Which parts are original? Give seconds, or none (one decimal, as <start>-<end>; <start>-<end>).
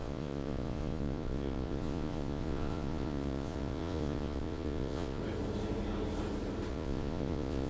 5.2-6.7